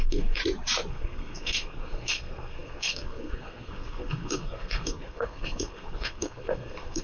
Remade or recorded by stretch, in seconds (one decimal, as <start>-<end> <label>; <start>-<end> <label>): 0.0-0.4 remade; 0.4-0.9 recorded; 0.9-7.0 remade